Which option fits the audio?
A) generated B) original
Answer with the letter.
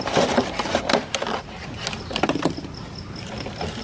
B